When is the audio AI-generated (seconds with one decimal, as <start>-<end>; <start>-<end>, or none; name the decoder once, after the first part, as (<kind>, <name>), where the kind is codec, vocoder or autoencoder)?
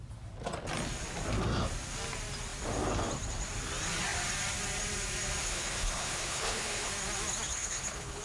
5.4-6.9 (codec, HILCodec); 7.5-8.2